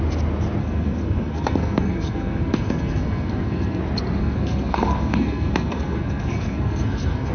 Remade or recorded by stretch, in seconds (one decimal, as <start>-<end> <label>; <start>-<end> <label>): 0.0-0.6 recorded; 0.6-3.8 remade; 3.8-4.2 recorded; 4.2-7.3 remade